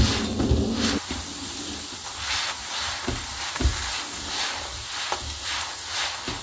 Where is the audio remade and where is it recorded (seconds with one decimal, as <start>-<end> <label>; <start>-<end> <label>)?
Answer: 0.0-6.4 recorded